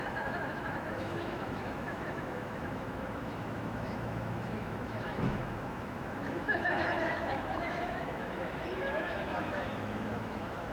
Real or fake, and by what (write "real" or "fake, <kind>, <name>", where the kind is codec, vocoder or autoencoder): fake, autoencoder, DAC-VAE